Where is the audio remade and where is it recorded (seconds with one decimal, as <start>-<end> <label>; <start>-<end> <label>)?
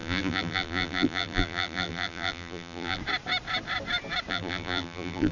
0.0-3.0 remade; 3.0-4.3 recorded; 4.3-5.3 remade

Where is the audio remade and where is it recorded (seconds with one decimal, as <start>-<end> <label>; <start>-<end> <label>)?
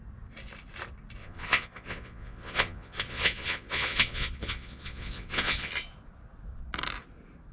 0.0-1.2 recorded; 1.2-5.7 remade; 5.7-7.5 recorded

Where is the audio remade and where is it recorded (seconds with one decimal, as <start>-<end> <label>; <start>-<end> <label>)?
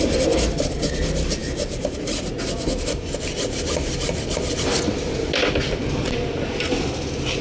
0.0-7.4 recorded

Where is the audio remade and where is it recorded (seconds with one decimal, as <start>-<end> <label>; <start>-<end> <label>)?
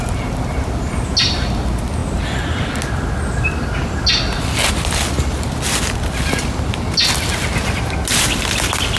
0.0-9.0 recorded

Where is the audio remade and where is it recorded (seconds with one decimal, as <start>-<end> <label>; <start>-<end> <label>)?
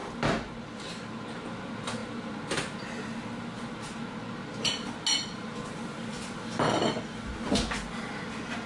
0.0-8.7 recorded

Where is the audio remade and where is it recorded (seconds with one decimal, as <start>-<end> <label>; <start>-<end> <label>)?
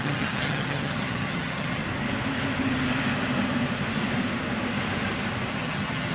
0.0-1.8 remade; 1.8-5.5 recorded; 5.5-6.1 remade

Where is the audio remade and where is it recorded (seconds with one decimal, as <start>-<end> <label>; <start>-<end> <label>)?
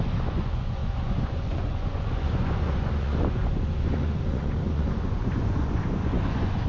0.0-6.7 remade